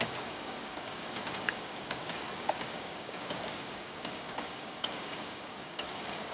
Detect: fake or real fake